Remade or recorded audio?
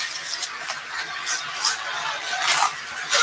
recorded